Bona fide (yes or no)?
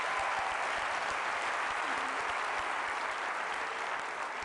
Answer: yes